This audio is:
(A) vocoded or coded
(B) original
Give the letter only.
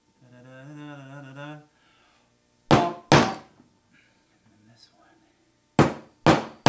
B